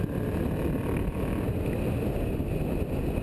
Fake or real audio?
real